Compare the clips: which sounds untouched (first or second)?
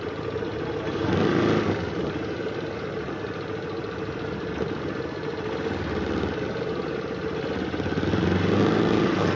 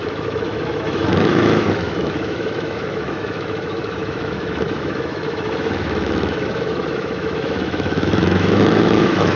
first